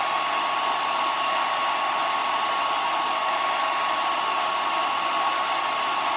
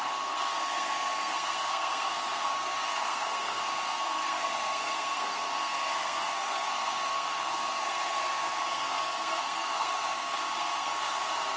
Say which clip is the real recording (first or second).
first